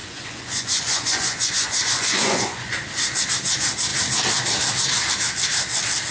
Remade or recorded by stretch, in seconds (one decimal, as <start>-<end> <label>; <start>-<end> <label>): 0.0-2.8 remade; 2.8-6.1 recorded